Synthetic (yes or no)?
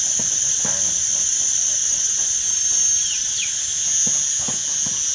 no